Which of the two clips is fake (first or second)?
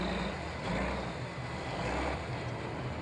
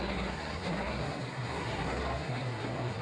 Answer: second